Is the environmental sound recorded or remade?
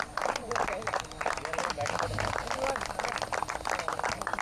recorded